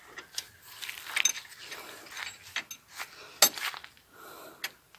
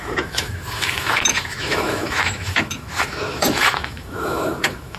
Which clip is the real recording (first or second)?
first